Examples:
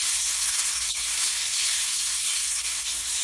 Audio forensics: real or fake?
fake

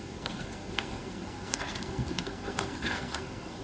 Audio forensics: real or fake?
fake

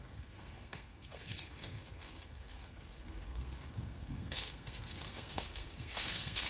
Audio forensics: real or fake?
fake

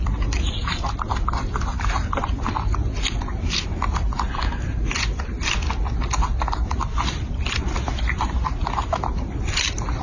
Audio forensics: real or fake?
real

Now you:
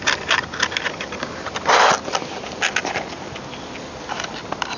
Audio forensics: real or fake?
real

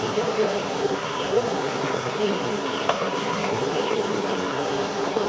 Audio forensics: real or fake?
fake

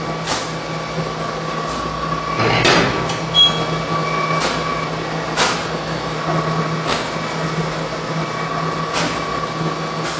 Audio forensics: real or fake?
real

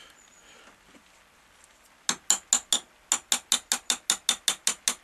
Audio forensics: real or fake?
real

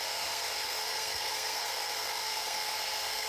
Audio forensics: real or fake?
fake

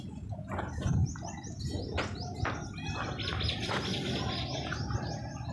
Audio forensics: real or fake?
real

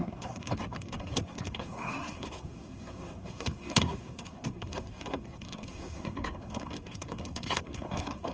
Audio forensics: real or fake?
fake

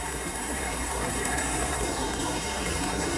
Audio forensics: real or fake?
fake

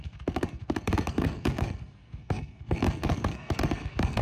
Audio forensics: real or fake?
fake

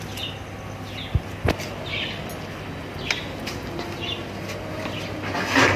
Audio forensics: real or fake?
real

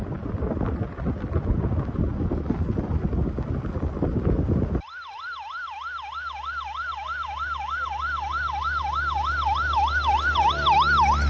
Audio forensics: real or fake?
real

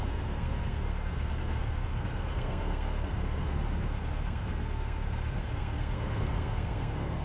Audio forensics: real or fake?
fake